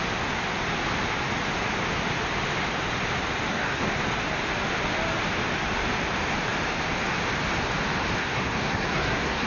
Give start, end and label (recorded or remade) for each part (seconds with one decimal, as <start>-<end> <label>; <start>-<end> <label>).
0.0-3.5 recorded; 3.5-4.0 remade; 4.0-8.2 recorded; 8.2-9.5 remade

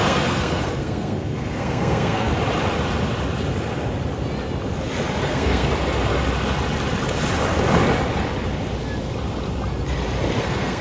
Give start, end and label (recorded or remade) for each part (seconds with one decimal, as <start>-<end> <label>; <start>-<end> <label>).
0.0-2.3 remade; 2.3-5.2 recorded; 5.2-5.7 remade; 5.7-10.4 recorded; 10.4-10.8 remade

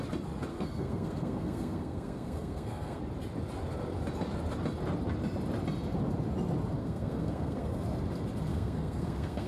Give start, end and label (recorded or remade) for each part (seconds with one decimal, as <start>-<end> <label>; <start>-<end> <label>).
0.0-0.5 recorded; 0.5-3.0 remade; 3.0-6.8 recorded; 6.8-7.8 remade; 7.8-8.5 recorded; 8.5-9.5 remade

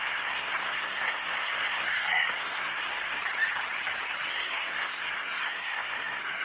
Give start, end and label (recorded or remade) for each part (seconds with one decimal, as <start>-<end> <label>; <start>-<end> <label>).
0.0-3.2 remade; 3.2-4.3 recorded; 4.3-6.4 remade

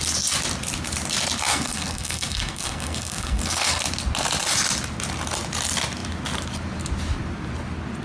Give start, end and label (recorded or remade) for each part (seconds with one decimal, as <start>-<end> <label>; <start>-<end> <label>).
0.0-1.5 recorded; 1.5-3.8 remade; 3.8-8.0 recorded

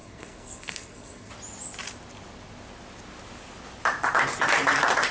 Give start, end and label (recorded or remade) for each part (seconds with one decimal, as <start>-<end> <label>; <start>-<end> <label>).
0.0-1.3 remade; 1.3-5.1 recorded

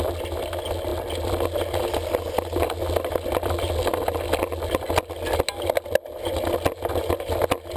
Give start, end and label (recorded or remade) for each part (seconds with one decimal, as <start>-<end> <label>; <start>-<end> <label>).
0.0-7.8 recorded

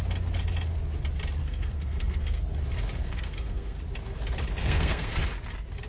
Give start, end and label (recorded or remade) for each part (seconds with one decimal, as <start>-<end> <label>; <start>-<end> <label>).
0.0-1.4 recorded; 1.4-2.4 remade; 2.4-3.0 recorded; 3.0-3.8 remade; 3.8-4.6 recorded; 4.6-5.2 remade; 5.2-5.9 recorded